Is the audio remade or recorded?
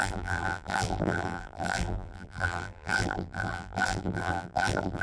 remade